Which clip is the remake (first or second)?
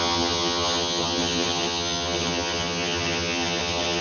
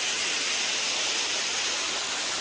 first